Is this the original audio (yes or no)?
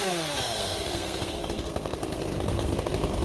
no